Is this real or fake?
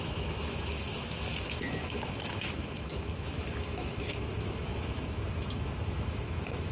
fake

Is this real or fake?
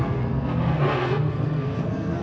fake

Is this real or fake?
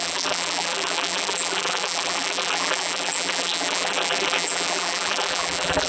fake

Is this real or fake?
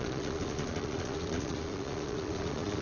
fake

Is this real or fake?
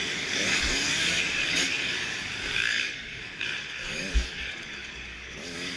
fake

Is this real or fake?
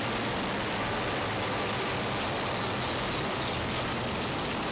real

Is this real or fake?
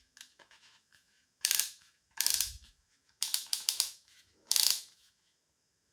fake